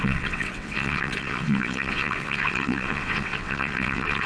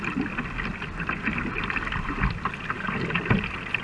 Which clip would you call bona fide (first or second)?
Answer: second